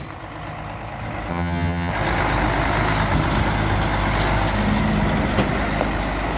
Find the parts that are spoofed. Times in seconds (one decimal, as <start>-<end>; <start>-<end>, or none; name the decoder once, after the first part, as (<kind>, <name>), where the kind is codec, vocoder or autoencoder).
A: 1.3-1.9 (vocoder, HiFi-GAN)